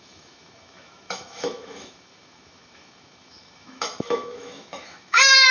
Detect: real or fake fake